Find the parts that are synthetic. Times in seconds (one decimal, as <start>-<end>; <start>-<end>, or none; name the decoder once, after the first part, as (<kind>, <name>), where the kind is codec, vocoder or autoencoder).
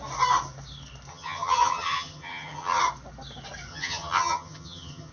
1.1-2.8 (vocoder, HiFi-GAN); 3.7-5.1